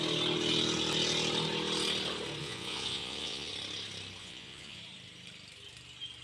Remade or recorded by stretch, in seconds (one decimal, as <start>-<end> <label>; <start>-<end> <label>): 0.0-2.4 recorded; 2.4-3.5 remade; 3.5-4.2 recorded; 4.2-4.8 remade; 4.8-6.2 recorded

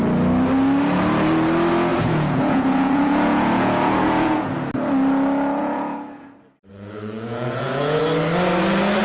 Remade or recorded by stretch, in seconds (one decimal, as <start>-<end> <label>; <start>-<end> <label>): 0.0-1.9 recorded; 1.9-4.5 remade; 4.5-5.6 recorded; 5.6-6.3 remade; 6.3-6.7 recorded; 6.7-8.0 remade; 8.0-9.0 recorded